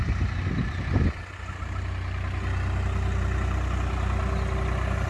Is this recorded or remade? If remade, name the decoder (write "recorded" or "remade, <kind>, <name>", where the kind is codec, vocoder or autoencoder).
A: recorded